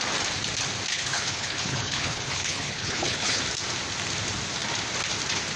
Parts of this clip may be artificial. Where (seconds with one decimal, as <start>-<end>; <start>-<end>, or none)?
0.9-3.4